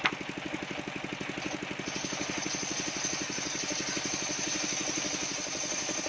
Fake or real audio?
real